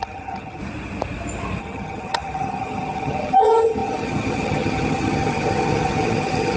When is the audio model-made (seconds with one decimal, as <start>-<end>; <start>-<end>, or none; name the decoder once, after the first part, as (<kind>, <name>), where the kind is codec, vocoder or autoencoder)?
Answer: 0.0-0.6 (vocoder, HiFi-GAN); 1.6-6.6